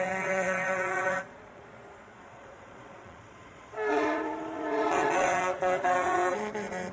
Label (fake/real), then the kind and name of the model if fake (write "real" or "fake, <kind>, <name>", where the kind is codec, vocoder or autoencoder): fake, vocoder, Vocos